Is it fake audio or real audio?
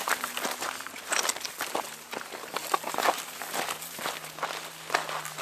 real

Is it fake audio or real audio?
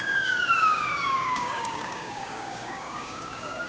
fake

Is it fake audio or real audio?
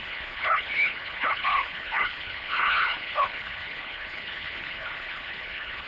fake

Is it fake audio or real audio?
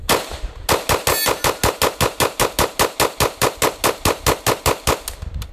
real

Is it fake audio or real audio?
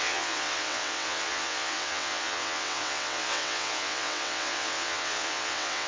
fake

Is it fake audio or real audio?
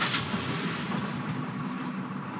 real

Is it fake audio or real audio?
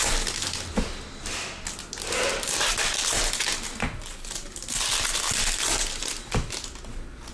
real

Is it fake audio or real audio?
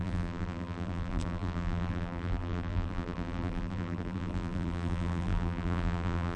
fake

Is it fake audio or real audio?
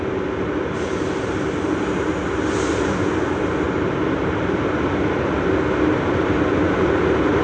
real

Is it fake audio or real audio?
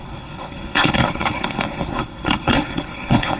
fake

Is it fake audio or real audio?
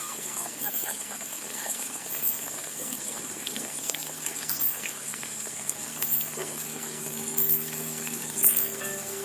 fake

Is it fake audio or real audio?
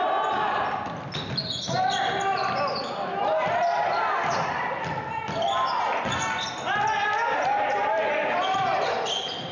real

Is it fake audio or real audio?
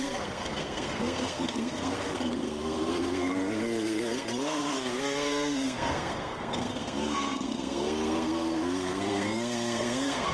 fake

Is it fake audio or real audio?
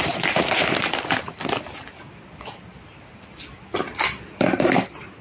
fake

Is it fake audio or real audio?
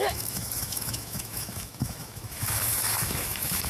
fake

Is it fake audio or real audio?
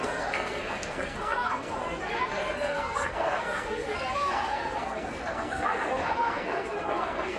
fake